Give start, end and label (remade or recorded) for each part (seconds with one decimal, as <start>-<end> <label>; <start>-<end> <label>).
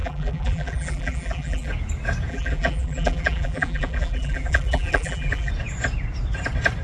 0.0-1.7 remade; 1.7-2.3 recorded; 2.3-5.5 remade; 5.5-6.8 recorded